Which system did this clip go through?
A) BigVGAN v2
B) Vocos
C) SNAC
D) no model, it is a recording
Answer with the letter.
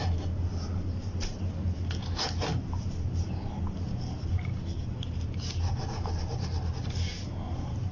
D